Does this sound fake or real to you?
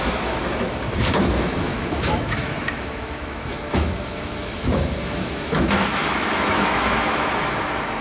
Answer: fake